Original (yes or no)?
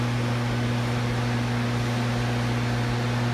yes